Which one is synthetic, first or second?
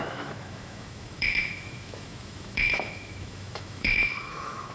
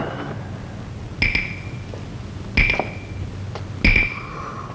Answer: first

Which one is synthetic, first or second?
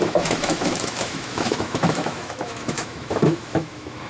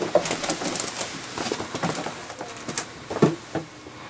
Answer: first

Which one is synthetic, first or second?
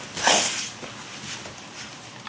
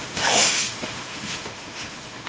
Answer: second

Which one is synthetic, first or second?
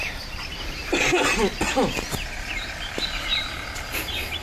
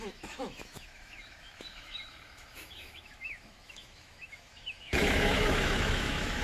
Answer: second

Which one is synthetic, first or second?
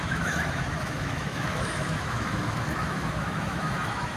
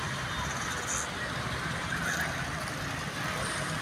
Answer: first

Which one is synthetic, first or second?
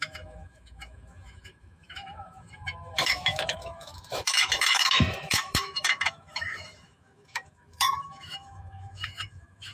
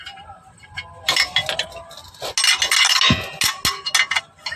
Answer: first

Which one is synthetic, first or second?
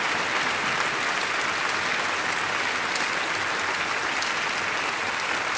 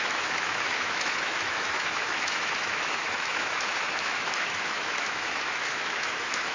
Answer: second